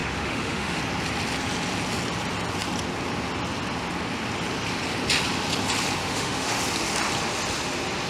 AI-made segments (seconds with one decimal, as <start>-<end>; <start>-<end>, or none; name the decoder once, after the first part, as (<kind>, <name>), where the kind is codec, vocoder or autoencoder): 0.0-0.8 (autoencoder, DAC-VAE); 6.0-6.6